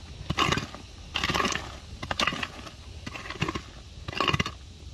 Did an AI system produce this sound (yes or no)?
no